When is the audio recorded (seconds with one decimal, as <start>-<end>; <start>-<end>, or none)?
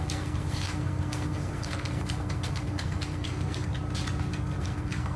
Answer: 3.7-4.3